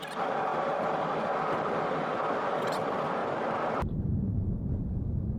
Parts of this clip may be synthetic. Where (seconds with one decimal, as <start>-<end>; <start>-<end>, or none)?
3.2-4.9